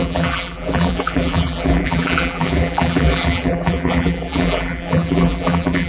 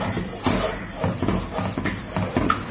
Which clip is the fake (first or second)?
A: first